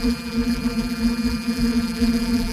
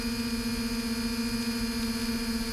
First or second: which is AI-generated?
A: first